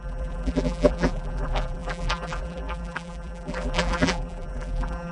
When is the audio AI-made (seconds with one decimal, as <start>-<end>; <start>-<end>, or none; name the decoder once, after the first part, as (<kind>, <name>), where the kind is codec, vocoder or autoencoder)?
0.0-5.1 (vocoder, BigVGAN v2)